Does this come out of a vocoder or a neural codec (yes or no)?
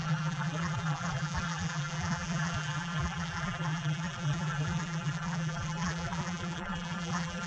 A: yes